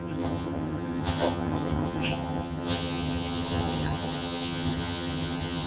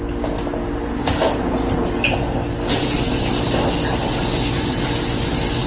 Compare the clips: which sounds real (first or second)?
second